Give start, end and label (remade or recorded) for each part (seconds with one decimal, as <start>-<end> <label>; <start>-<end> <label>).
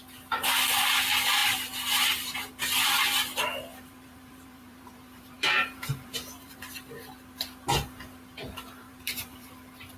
0.0-1.4 recorded; 1.4-2.5 remade; 2.5-3.7 recorded; 3.7-6.9 remade; 6.9-8.8 recorded; 8.8-9.5 remade; 9.5-10.0 recorded